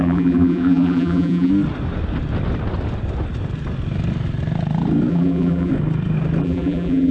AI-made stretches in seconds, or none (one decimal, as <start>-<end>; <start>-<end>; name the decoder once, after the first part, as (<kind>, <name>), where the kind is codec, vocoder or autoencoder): 0.0-1.5 (vocoder, BigVGAN v2); 5.1-5.7; 6.4-7.1